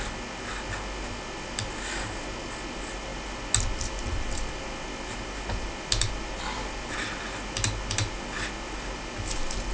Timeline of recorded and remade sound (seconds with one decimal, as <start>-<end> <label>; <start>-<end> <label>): 0.0-9.7 recorded